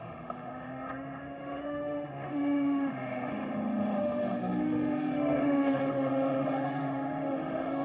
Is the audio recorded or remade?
remade